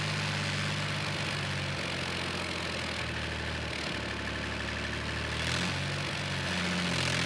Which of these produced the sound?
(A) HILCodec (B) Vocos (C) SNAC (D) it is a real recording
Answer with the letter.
D